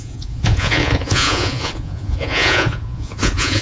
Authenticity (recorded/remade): remade